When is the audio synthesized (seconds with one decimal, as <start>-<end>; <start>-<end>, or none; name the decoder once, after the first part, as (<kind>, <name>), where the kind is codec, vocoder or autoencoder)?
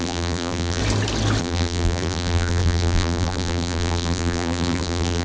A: 0.0-0.8 (vocoder, BigVGAN v2); 1.4-5.2